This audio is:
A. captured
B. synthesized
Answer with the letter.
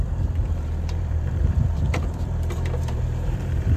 B